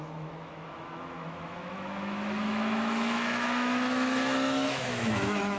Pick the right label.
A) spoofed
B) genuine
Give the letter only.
A